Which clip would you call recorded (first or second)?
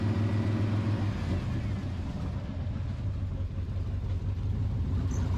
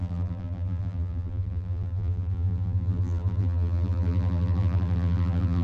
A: first